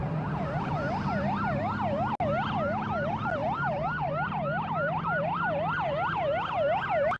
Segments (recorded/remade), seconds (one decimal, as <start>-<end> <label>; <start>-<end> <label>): 0.0-0.7 remade; 0.7-3.4 recorded; 3.4-4.1 remade; 4.1-7.2 recorded